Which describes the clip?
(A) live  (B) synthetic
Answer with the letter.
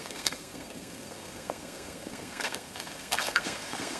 B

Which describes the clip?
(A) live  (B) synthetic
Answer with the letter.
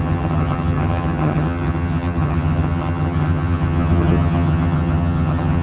B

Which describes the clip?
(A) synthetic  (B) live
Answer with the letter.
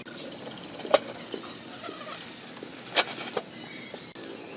B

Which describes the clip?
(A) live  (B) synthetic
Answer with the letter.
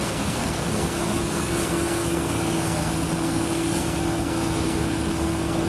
B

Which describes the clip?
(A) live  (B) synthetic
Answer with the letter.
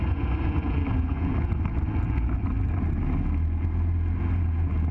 A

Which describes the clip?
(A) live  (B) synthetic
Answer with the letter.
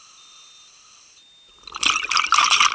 A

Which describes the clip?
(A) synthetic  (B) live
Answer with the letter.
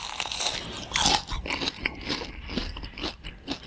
B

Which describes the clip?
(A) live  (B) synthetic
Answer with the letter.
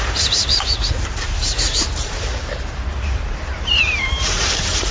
B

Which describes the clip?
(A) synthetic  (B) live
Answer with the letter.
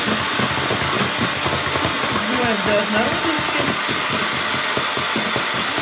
B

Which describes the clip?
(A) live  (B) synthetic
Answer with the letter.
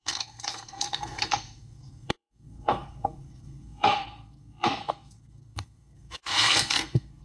B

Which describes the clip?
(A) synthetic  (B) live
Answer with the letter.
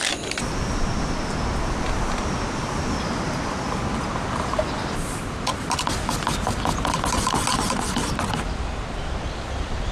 B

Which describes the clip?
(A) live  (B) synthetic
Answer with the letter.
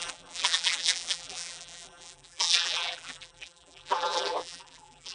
B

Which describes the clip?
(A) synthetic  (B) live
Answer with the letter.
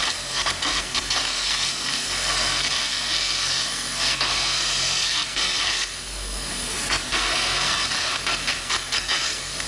A